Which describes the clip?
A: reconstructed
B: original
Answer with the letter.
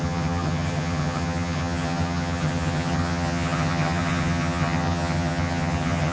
A